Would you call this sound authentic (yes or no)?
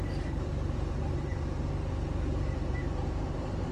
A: no